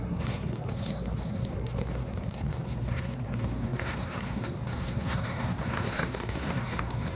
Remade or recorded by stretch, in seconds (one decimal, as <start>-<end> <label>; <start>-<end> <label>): 0.0-7.2 remade